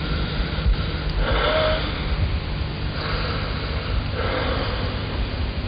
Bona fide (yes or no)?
yes